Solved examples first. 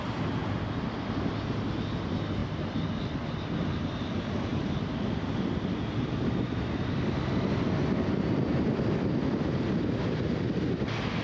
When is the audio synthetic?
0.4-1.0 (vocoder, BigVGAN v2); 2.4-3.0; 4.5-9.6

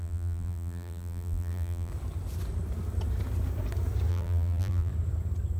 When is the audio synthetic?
0.0-1.9 (vocoder, BigVGAN v2); 4.1-4.9

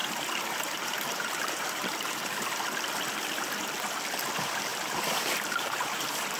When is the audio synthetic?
0.0-2.3 (vocoder, BigVGAN v2); 4.7-6.4

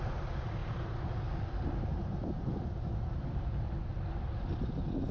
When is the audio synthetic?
0.6-3.7 (vocoder, BigVGAN v2)

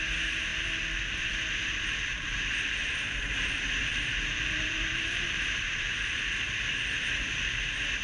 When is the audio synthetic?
2.1-6.1 (vocoder, BigVGAN v2)

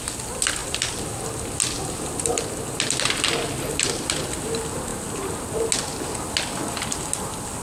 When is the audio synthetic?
0.6-4.2 (vocoder, BigVGAN v2); 4.9-5.7

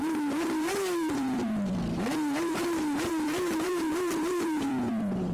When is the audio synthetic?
0.0-5.3 (vocoder, BigVGAN v2)

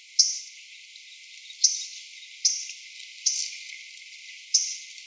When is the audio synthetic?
none